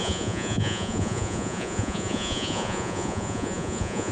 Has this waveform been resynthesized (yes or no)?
yes